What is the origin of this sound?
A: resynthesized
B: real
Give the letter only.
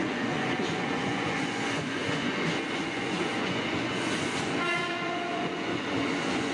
A